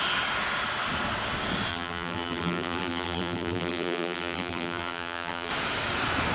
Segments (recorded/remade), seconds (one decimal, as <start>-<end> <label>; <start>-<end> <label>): 0.0-1.7 recorded; 1.7-5.5 remade; 5.5-6.3 recorded